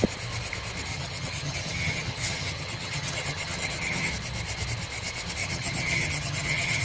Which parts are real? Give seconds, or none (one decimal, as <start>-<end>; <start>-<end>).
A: 0.0-0.9; 4.1-5.4